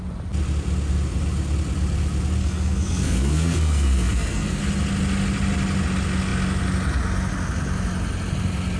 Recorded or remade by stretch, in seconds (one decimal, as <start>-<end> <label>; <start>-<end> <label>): 0.0-2.4 recorded; 2.4-4.6 remade; 4.6-8.8 recorded